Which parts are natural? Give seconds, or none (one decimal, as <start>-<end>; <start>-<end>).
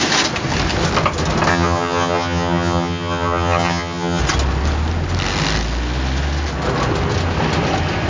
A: 0.0-1.5; 4.2-8.1